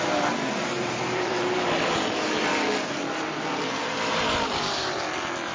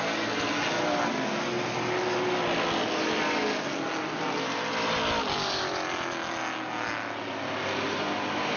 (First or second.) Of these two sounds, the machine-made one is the first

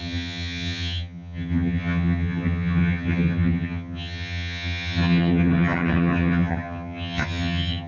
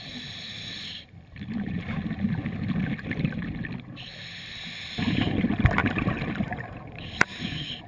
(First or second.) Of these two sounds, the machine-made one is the first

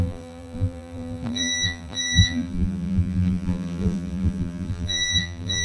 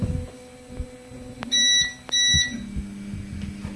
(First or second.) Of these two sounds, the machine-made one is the first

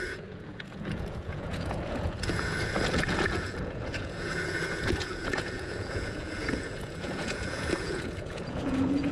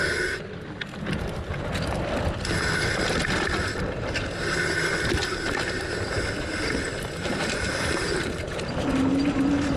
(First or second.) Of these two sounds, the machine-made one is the first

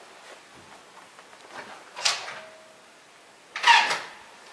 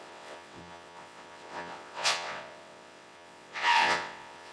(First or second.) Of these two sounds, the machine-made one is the second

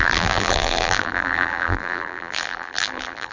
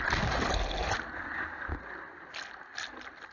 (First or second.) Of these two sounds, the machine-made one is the first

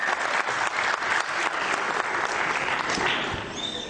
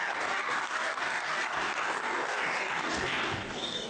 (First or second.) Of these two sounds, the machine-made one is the second